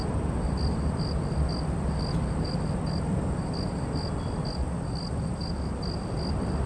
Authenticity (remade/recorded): recorded